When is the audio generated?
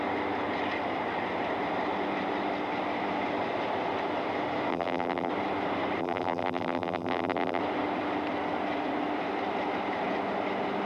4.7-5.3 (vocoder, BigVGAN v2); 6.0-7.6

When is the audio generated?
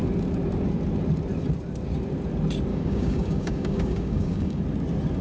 2.7-4.6 (codec, DAC)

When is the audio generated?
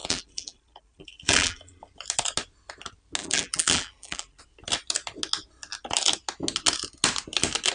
0.0-1.8 (vocoder, BigVGAN v2); 3.2-4.4